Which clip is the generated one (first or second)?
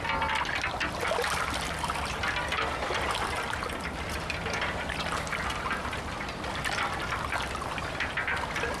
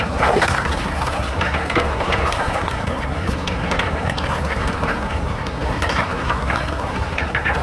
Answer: second